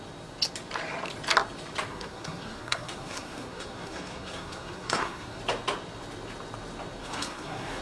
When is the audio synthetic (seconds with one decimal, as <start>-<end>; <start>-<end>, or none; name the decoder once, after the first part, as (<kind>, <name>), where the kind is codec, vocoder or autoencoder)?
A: 1.9-5.4 (codec, SNAC); 7.0-7.8